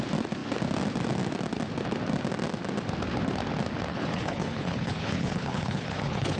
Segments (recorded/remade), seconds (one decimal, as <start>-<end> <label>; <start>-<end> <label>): 0.0-3.9 recorded; 3.9-6.4 remade